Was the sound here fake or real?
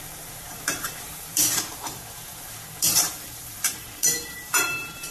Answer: fake